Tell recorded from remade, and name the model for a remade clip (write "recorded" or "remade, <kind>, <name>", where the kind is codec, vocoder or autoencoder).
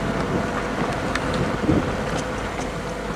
recorded